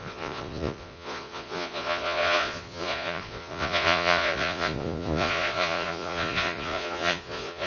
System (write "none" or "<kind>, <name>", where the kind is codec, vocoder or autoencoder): vocoder, Vocos